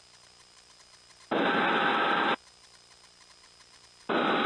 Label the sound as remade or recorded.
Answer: recorded